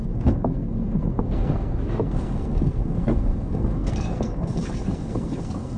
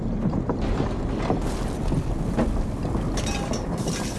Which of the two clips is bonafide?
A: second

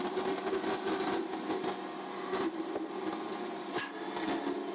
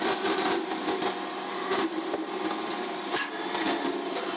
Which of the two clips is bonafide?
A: first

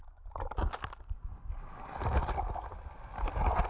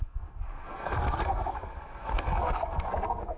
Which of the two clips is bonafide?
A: first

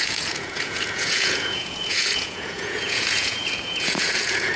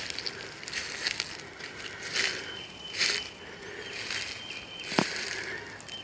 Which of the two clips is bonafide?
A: second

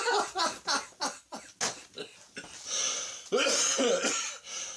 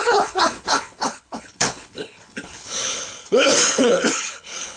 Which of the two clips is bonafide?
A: first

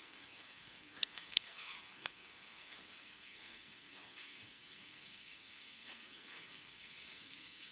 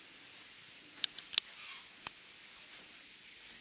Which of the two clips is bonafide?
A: second